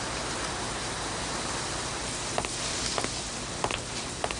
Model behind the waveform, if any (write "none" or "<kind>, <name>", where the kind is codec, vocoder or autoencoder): none